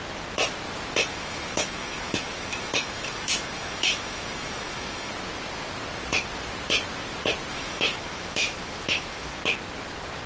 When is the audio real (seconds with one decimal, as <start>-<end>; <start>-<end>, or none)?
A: 0.0-1.1; 5.1-7.5; 9.4-10.3